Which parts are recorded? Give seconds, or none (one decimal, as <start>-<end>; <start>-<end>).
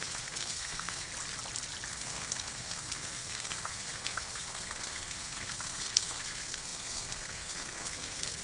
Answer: 1.1-1.9